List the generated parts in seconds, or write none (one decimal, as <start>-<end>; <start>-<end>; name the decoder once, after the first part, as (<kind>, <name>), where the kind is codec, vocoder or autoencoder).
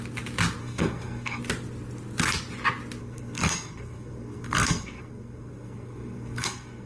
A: 0.6-1.4 (codec, SNAC); 3.0-6.9